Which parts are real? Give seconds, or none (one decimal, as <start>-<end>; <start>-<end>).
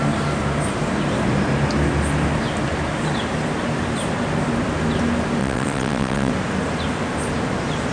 0.0-5.4; 6.3-7.9